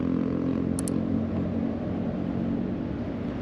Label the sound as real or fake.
real